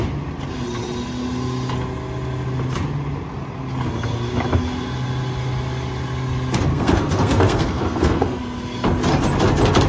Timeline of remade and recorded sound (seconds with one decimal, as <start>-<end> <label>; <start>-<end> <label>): 0.0-6.7 recorded; 6.7-8.4 remade; 8.4-9.9 recorded